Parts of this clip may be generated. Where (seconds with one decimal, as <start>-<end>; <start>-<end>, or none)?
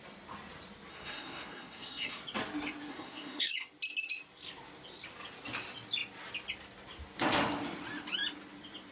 0.9-2.2; 2.9-3.5